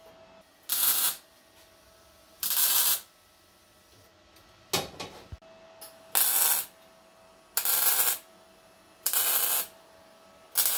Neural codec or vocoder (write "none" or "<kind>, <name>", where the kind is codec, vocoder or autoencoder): none